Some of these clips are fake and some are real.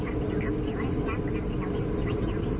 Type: real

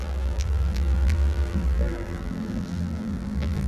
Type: fake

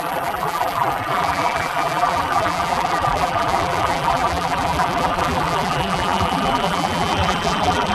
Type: fake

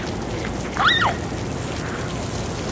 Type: real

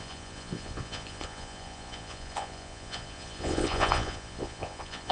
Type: fake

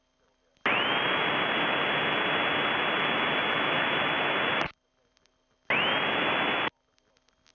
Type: real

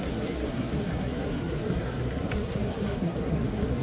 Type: fake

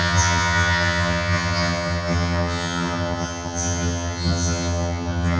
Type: fake